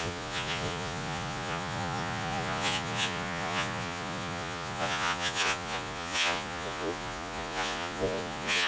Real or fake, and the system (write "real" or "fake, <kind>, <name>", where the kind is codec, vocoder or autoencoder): fake, vocoder, Vocos